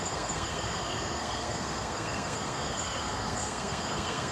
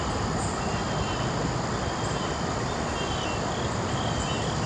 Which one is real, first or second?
second